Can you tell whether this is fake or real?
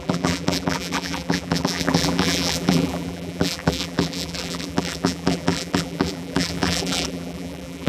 fake